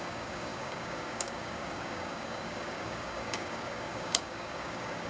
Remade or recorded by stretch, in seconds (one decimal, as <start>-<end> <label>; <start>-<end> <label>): 0.0-5.1 remade